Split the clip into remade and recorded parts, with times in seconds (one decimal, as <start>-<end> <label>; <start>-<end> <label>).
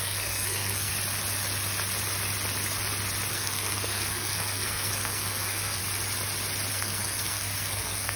0.0-0.9 remade; 0.9-3.3 recorded; 3.3-5.8 remade; 5.8-6.7 recorded; 6.7-8.2 remade